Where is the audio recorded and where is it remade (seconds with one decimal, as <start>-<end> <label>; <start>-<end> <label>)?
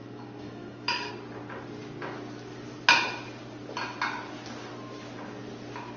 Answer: 0.0-1.1 remade; 1.1-6.0 recorded